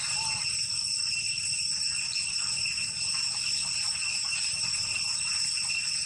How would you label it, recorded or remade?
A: recorded